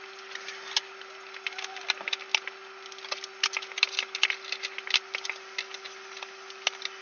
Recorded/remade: recorded